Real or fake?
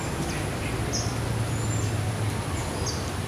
real